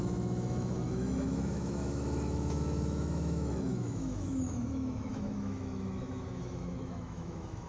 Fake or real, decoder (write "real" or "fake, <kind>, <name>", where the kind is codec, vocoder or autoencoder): fake, autoencoder, DAC-VAE